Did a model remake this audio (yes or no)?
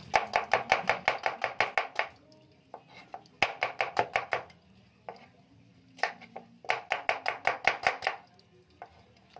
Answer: no